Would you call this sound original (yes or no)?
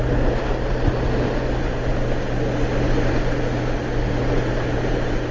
yes